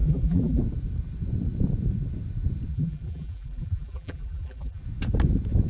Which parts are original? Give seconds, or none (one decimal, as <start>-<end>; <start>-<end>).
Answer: 0.6-2.7; 4.8-5.7